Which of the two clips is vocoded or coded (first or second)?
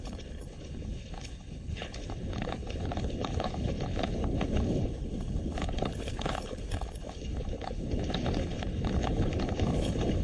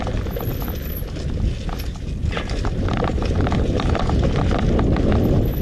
first